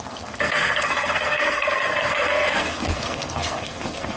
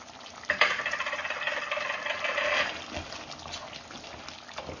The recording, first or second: second